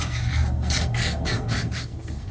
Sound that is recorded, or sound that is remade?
remade